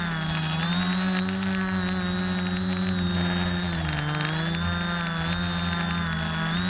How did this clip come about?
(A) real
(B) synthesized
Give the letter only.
A